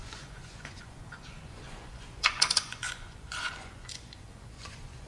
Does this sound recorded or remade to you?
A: remade